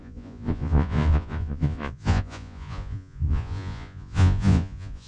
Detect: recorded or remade remade